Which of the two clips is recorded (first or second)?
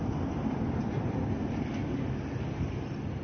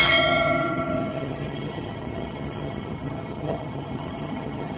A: first